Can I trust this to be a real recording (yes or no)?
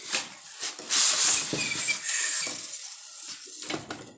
yes